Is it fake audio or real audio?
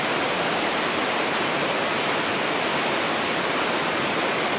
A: real